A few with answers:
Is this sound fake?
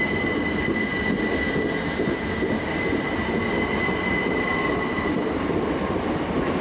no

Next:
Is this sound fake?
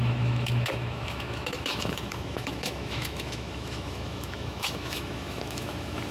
yes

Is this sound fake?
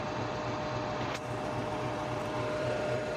yes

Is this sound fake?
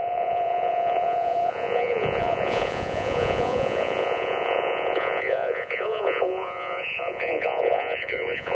yes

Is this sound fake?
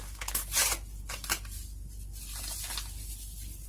no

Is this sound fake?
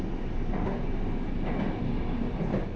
no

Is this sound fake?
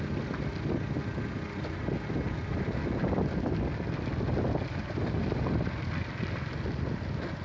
no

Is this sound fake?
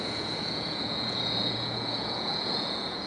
yes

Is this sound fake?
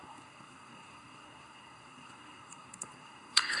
yes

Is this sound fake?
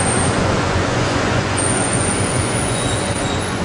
yes